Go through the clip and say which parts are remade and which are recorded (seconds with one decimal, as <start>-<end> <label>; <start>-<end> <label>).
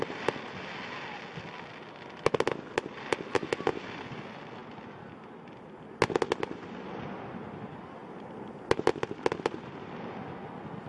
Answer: 0.0-10.9 recorded